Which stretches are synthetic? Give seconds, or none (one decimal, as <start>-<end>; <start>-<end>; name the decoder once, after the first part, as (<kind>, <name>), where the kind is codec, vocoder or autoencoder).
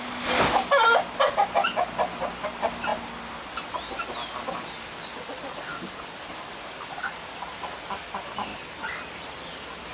none